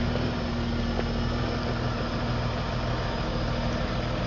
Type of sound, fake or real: real